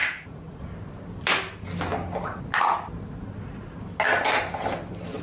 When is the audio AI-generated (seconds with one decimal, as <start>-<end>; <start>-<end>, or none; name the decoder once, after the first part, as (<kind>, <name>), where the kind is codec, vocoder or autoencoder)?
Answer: 0.0-0.6 (vocoder, Vocos)